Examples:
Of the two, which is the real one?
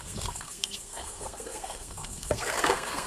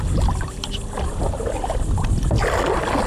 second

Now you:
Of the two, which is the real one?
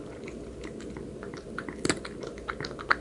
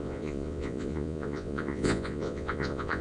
first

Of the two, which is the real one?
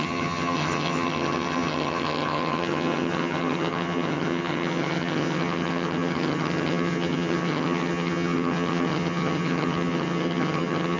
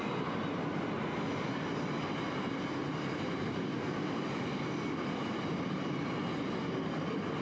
second